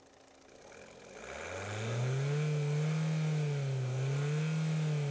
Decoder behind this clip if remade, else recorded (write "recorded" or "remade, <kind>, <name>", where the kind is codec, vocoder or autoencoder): recorded